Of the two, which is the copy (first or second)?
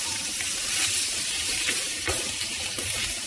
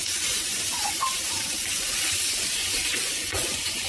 second